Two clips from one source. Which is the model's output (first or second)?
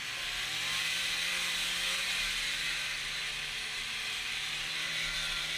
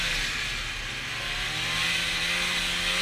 first